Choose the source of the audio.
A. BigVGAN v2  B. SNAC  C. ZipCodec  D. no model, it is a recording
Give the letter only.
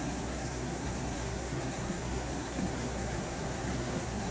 B